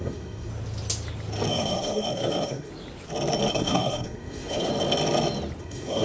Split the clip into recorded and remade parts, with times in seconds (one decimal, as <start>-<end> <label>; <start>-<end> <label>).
0.0-0.5 remade; 0.5-1.5 recorded; 1.5-2.7 remade; 2.7-3.5 recorded; 3.5-4.7 remade; 4.7-5.6 recorded; 5.6-6.0 remade